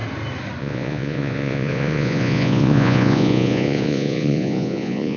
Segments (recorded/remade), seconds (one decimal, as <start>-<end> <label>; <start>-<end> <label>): 0.0-0.6 recorded; 0.6-5.2 remade